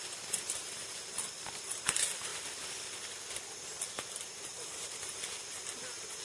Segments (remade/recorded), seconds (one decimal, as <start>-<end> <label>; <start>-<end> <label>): 0.0-6.2 recorded